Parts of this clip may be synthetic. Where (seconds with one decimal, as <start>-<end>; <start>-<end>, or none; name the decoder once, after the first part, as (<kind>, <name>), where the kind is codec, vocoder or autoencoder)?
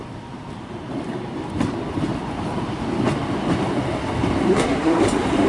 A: 4.5-5.0 (codec, SNAC)